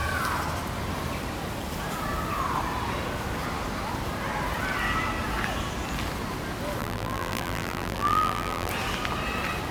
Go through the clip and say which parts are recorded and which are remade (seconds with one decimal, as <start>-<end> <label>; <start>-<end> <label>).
0.0-6.8 recorded; 6.8-8.7 remade; 8.7-9.7 recorded